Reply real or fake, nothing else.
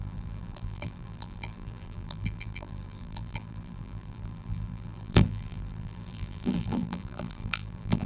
fake